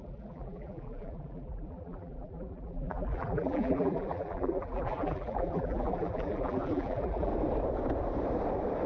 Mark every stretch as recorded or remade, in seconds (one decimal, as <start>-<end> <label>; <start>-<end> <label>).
0.0-7.3 remade; 7.3-8.9 recorded